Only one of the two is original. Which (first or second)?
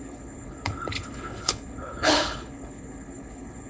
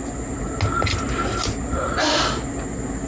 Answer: second